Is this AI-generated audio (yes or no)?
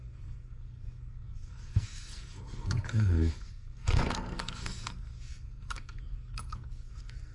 yes